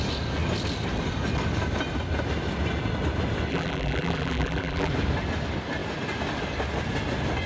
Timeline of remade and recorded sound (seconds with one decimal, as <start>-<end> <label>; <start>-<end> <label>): 0.0-3.5 recorded; 3.5-4.9 remade; 4.9-7.5 recorded